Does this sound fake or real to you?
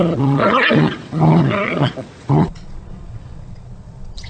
fake